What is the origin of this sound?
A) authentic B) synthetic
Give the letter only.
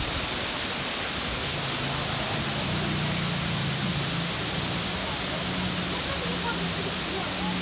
A